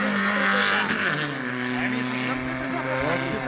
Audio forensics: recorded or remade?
recorded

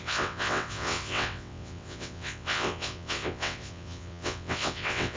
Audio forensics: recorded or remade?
remade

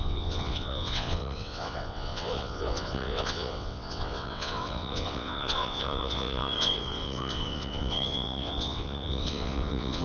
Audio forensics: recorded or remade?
remade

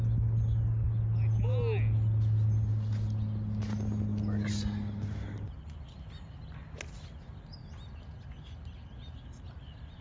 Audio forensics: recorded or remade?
recorded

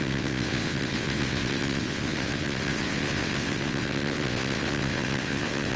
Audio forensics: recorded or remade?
remade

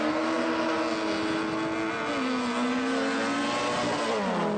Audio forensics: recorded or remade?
recorded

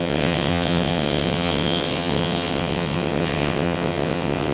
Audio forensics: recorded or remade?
remade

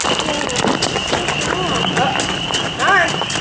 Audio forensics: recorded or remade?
recorded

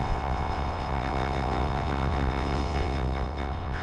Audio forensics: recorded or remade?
remade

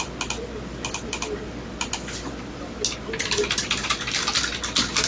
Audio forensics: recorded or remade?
recorded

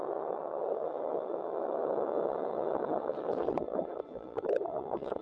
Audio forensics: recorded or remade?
remade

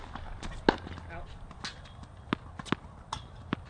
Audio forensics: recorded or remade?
recorded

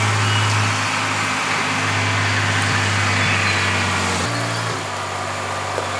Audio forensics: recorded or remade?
recorded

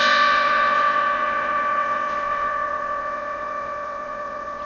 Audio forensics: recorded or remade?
remade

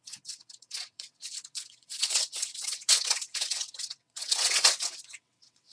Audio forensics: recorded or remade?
remade